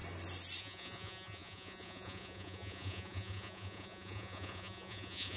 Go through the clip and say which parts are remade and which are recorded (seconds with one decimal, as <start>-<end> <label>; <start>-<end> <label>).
0.0-0.6 recorded; 0.6-5.4 remade